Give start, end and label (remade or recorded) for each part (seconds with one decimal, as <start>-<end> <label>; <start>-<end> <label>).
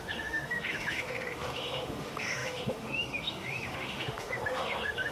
0.0-5.1 remade